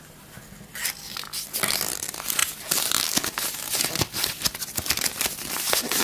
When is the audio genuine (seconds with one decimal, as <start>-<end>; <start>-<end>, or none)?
0.0-6.0